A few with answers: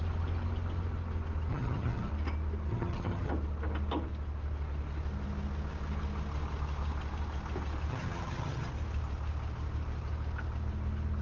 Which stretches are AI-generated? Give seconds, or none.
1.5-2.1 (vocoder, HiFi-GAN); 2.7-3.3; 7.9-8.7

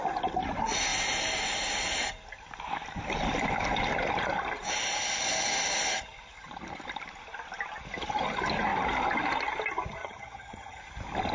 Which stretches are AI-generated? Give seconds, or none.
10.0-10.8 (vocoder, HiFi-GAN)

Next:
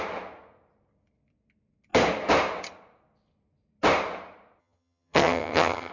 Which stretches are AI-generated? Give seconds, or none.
4.6-5.9 (vocoder, HiFi-GAN)

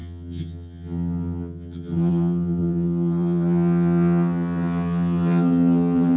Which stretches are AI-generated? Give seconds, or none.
0.0-6.2 (vocoder, HiFi-GAN)

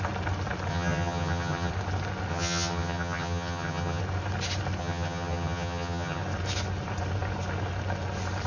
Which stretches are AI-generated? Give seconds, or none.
0.7-1.7 (vocoder, HiFi-GAN); 2.3-4.0; 4.8-6.2